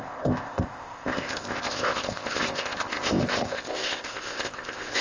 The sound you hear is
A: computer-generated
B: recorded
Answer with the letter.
A